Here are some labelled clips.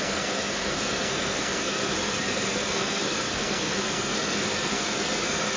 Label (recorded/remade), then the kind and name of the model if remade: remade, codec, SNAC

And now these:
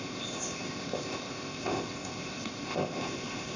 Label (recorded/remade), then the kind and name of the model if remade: remade, codec, ZipCodec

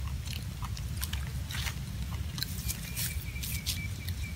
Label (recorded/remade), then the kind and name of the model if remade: recorded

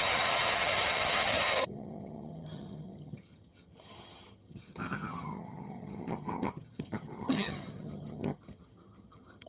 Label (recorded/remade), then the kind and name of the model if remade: remade, vocoder, HiFi-GAN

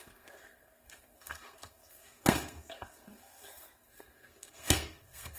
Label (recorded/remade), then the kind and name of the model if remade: remade, codec, SNAC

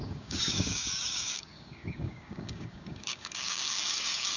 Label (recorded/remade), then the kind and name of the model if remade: remade, codec, DAC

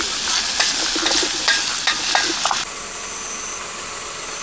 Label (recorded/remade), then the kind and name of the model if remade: recorded